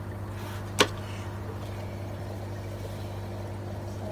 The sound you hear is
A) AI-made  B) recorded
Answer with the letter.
B